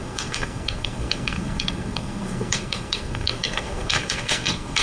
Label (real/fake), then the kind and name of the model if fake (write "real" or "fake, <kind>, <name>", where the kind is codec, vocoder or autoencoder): fake, codec, SNAC